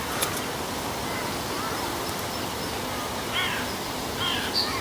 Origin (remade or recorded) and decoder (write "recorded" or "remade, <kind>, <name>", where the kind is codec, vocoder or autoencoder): recorded